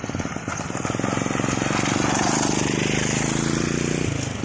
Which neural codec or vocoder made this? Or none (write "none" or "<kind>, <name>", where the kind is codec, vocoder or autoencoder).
none